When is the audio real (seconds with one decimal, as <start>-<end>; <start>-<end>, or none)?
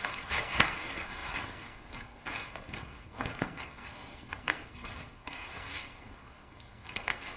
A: none